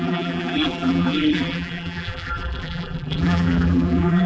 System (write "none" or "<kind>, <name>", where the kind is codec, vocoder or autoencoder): vocoder, BigVGAN v2